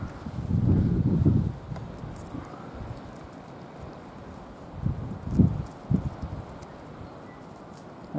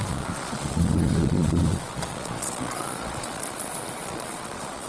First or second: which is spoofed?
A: second